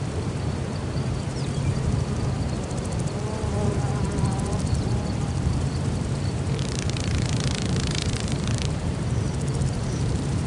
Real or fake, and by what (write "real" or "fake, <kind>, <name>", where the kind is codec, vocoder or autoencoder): fake, vocoder, BigVGAN v2